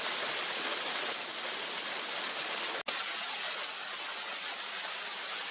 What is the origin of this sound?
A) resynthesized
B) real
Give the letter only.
B